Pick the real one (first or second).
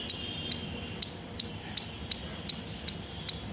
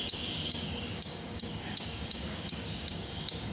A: first